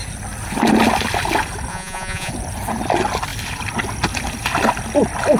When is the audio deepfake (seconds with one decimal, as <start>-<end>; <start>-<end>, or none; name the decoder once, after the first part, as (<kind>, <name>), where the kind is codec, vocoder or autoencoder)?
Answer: 1.7-2.3 (vocoder, Vocos)